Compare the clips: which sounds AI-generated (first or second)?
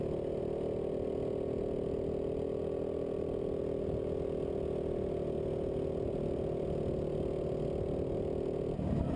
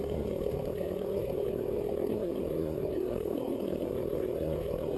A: second